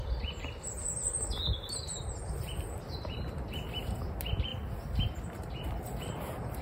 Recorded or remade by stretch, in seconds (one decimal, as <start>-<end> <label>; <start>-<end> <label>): 0.0-6.6 recorded